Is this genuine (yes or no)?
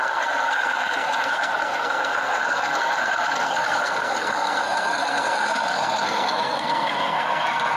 no